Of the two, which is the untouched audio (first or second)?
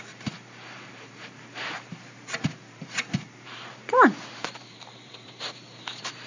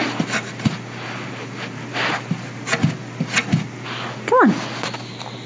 second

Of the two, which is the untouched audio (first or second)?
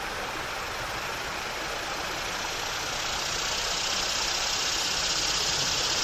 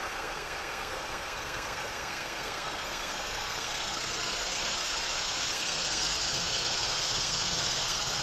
first